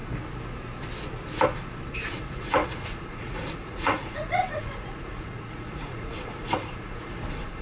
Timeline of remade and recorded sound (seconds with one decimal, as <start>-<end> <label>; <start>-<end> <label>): 0.0-2.1 recorded; 2.1-7.6 remade

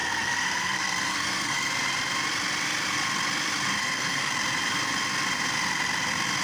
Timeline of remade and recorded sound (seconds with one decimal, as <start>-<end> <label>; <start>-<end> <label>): 0.0-1.7 remade; 1.7-3.8 recorded; 3.8-4.3 remade; 4.3-6.4 recorded